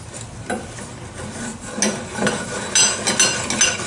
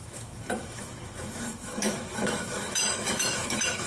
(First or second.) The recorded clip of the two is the first